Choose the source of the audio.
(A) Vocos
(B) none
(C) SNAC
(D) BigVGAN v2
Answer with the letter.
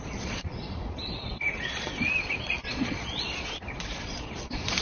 A